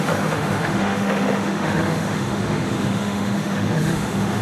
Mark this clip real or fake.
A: fake